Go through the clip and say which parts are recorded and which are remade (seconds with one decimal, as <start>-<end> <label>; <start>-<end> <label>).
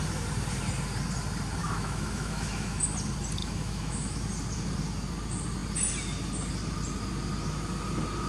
0.0-1.6 recorded; 1.6-2.8 remade; 2.8-3.4 recorded; 3.4-4.2 remade; 4.2-8.3 recorded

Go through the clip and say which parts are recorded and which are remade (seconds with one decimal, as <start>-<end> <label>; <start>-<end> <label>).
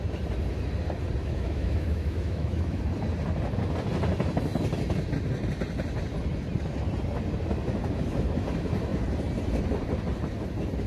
0.0-1.2 recorded; 1.2-2.8 remade; 2.8-10.9 recorded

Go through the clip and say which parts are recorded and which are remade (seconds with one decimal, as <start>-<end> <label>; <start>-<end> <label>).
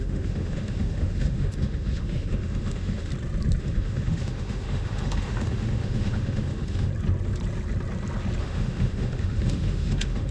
0.0-3.1 remade; 3.1-3.6 recorded; 3.6-6.9 remade; 6.9-8.4 recorded; 8.4-10.3 remade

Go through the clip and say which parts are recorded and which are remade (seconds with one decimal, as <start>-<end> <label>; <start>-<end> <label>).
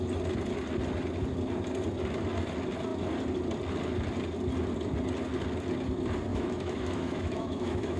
0.0-6.3 recorded; 6.3-8.0 remade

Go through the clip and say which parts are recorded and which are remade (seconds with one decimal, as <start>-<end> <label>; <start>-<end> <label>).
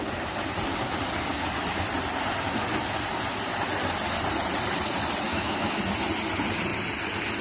0.0-5.3 recorded; 5.3-5.8 remade; 5.8-7.4 recorded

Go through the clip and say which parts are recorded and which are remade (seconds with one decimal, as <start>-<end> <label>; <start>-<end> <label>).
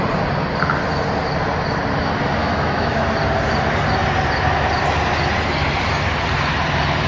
0.0-2.4 recorded; 2.4-3.0 remade; 3.0-7.1 recorded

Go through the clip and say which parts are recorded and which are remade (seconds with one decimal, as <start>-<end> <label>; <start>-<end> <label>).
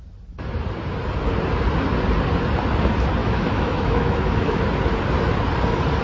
0.0-3.2 recorded; 3.2-4.6 remade; 4.6-6.0 recorded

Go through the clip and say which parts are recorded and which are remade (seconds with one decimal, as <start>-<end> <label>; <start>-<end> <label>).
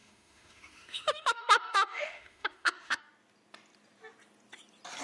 0.0-3.0 remade; 3.0-5.0 recorded